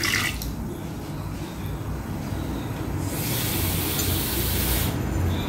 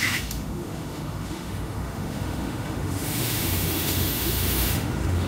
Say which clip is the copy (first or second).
second